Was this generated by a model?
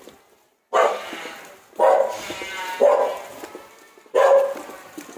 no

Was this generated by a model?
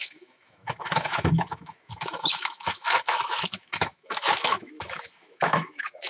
yes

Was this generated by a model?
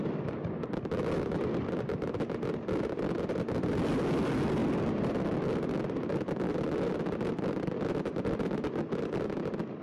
no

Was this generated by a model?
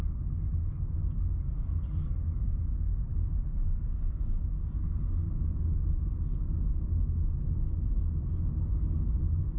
no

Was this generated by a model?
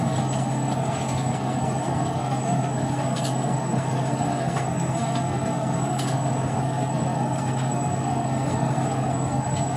yes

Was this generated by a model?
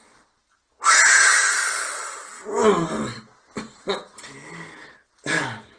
no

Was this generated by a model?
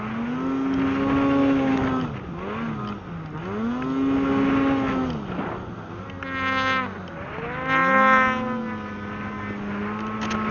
no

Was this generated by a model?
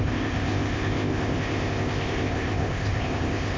yes